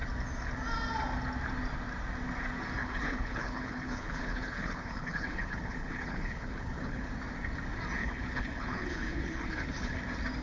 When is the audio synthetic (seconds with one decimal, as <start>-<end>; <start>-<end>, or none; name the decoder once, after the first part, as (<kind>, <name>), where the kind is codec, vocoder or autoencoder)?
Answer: 2.8-7.1 (codec, HILCodec); 8.0-10.0